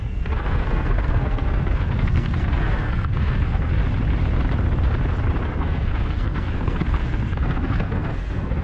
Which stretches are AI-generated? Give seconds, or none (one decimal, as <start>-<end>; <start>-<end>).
0.0-3.8; 5.6-8.6